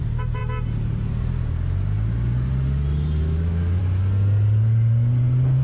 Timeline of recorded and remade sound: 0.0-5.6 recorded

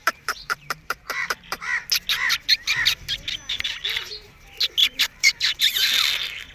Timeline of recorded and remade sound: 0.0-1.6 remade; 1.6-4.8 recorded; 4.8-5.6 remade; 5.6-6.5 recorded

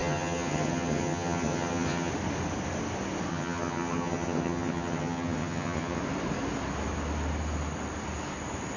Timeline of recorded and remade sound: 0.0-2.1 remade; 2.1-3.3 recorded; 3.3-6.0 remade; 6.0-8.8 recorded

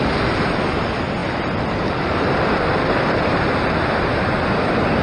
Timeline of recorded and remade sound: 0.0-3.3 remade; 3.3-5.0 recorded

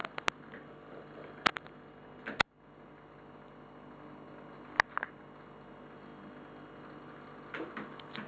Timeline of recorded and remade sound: 0.0-8.3 recorded